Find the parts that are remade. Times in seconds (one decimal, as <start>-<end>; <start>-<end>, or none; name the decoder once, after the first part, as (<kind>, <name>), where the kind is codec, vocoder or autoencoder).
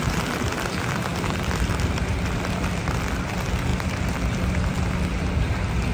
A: 1.1-3.0 (vocoder, BigVGAN v2); 3.7-5.5